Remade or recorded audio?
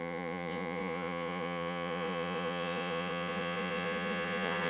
remade